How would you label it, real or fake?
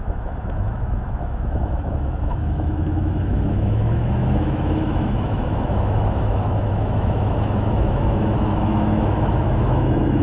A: fake